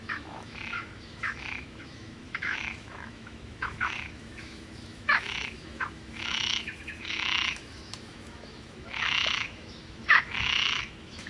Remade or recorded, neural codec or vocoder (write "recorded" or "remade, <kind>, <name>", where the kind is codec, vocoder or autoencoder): remade, autoencoder, DAC-VAE